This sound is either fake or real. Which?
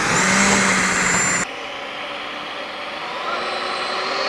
real